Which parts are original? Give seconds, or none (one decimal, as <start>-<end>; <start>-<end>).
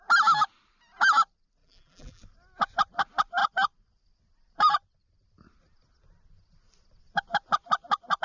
0.0-1.6; 2.2-8.2